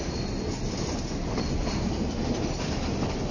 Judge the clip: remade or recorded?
recorded